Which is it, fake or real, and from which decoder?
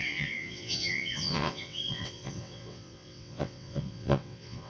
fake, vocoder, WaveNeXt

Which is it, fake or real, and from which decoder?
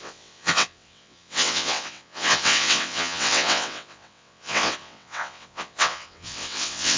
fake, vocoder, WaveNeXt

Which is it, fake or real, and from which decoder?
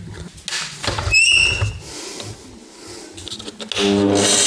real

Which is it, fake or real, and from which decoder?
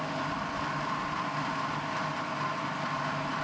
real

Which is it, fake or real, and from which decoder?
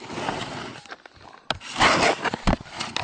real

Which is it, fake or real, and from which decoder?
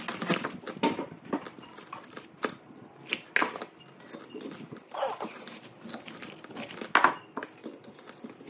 real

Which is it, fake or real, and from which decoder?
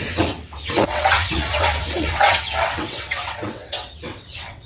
fake, vocoder, WaveNeXt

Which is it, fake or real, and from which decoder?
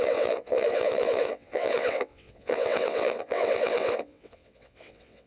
fake, vocoder, WaveNeXt